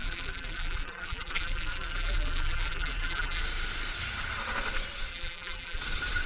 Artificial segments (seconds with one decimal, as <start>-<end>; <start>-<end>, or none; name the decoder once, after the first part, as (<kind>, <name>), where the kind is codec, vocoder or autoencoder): 0.0-3.4 (vocoder, BigVGAN v2); 5.1-5.8